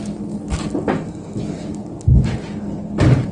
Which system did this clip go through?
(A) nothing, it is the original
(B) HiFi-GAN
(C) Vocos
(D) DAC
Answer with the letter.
A